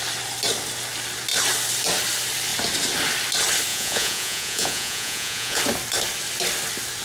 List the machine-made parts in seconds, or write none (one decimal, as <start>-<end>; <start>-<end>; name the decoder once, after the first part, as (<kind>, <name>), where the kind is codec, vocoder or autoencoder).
3.7-5.6 (vocoder, Vocos)